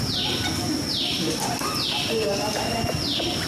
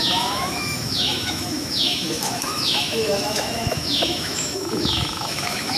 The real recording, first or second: first